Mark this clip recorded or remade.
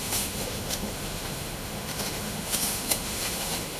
remade